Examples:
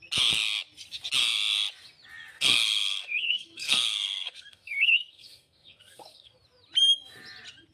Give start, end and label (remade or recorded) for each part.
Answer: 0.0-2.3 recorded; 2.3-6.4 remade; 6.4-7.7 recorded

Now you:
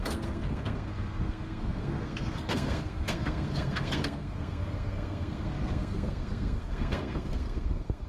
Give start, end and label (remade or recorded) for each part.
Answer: 0.0-8.1 remade

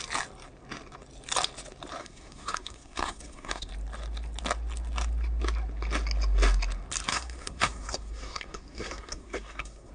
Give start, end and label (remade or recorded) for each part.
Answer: 0.0-2.0 recorded; 2.0-3.7 remade; 3.7-7.1 recorded; 7.1-9.9 remade

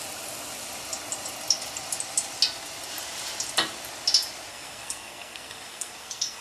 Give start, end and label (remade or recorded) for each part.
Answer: 0.0-4.5 recorded; 4.5-6.4 remade

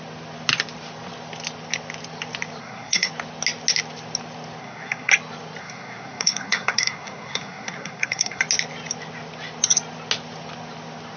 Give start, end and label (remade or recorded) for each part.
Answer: 0.0-2.6 recorded; 2.6-3.1 remade; 3.1-4.6 recorded; 4.6-5.1 remade; 5.1-5.6 recorded; 5.6-8.4 remade; 8.4-11.2 recorded